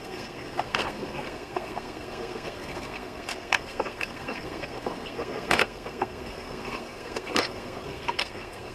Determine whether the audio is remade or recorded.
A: remade